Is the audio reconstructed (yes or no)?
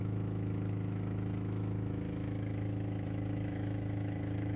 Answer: yes